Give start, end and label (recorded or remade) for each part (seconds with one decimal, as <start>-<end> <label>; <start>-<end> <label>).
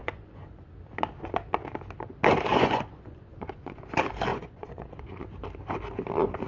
0.0-0.5 remade; 0.5-2.5 recorded; 2.5-3.8 remade; 3.8-4.3 recorded; 4.3-5.2 remade; 5.2-6.5 recorded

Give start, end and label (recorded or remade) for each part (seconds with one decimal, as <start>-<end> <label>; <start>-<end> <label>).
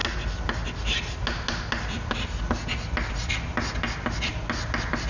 0.0-5.1 recorded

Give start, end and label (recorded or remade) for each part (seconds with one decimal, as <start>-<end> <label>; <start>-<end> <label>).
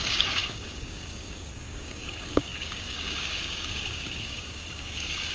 0.0-5.3 remade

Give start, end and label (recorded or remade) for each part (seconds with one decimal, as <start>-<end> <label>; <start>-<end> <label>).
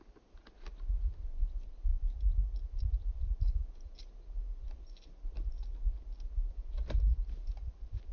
0.0-8.1 recorded